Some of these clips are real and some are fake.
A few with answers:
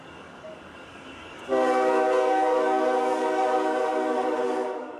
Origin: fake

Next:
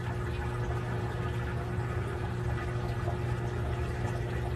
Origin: real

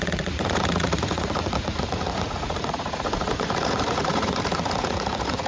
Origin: fake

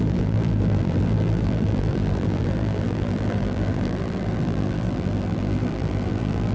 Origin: fake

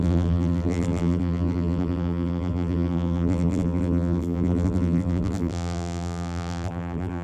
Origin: fake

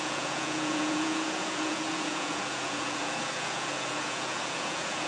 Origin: fake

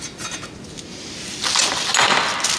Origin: real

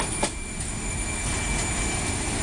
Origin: real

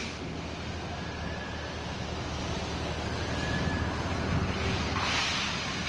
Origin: real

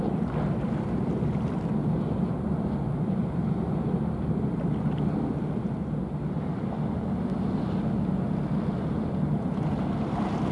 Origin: real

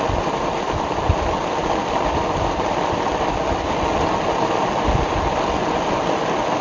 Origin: real